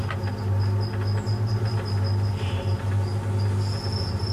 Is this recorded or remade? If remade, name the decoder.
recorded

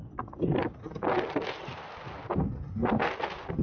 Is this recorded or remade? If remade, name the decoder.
recorded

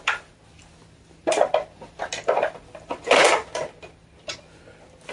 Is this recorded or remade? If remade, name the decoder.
recorded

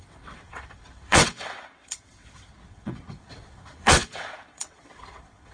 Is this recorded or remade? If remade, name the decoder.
remade, vocoder, WaveNeXt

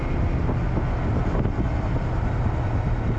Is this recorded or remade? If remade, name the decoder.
recorded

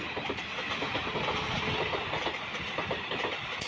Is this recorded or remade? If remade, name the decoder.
recorded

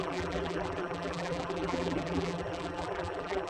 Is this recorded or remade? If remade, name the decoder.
remade, vocoder, BigVGAN v2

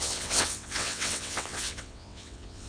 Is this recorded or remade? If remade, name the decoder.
remade, vocoder, WaveNeXt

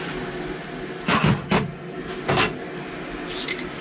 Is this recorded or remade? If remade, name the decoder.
recorded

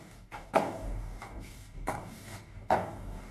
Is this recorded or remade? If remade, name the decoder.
remade, codec, DAC